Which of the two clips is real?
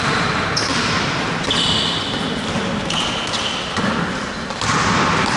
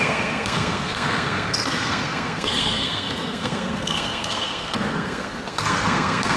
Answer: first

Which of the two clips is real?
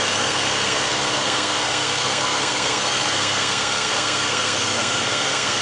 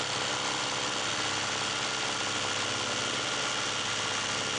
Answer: second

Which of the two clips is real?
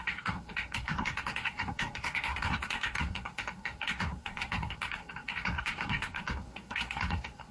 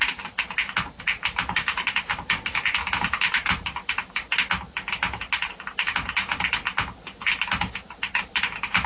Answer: second